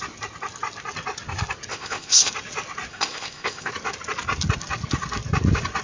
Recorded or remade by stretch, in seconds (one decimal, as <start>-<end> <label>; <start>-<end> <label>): 0.0-1.7 recorded; 1.7-2.3 remade; 2.3-2.9 recorded; 2.9-3.7 remade; 3.7-5.8 recorded